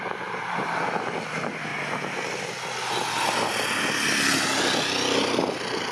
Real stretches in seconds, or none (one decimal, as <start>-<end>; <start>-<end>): 1.7-5.2